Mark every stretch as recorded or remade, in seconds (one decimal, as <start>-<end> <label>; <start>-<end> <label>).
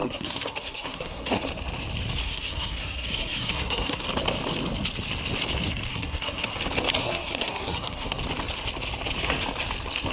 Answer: 0.0-1.4 remade; 1.4-2.2 recorded; 2.2-4.0 remade; 4.0-5.9 recorded; 5.9-6.6 remade; 6.6-7.0 recorded; 7.0-8.2 remade; 8.2-10.1 recorded